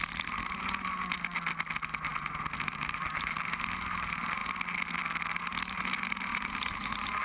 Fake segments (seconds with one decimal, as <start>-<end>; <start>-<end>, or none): 6.3-7.2